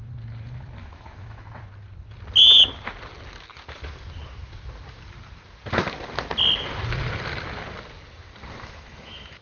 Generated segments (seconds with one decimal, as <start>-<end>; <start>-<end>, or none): 0.8-1.5; 8.6-9.4